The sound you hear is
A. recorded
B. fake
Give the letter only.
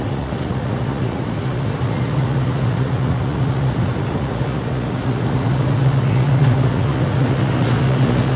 B